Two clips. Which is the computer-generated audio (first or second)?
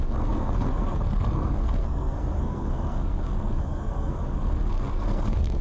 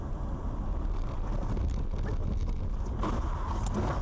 first